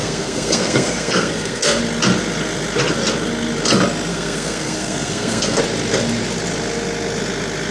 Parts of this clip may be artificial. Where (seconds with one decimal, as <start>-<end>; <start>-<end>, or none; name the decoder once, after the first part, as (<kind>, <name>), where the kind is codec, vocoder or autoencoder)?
0.0-1.8 (codec, SNAC); 4.1-5.6